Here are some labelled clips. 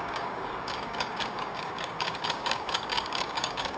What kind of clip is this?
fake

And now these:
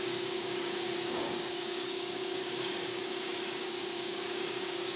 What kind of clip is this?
fake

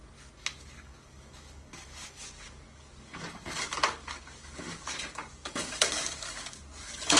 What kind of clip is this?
fake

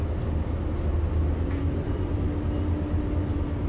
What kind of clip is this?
real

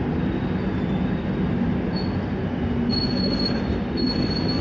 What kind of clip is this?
real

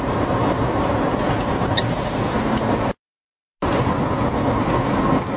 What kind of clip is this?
real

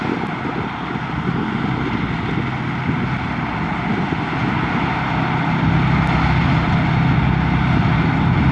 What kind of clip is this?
real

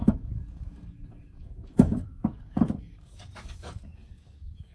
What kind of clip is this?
fake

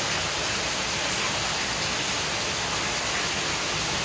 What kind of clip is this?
real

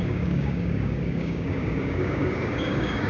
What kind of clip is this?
fake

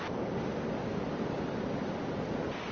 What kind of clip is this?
real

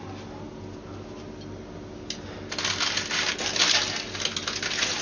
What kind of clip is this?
real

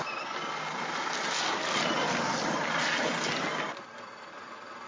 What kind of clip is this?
real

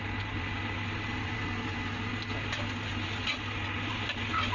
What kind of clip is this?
real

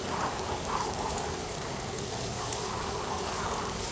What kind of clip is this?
fake